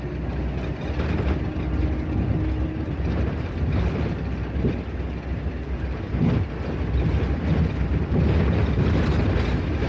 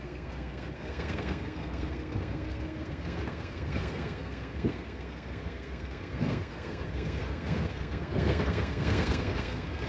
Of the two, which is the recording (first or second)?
first